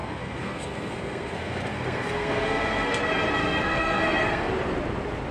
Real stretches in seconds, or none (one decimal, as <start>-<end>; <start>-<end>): 3.0-3.4; 4.5-5.3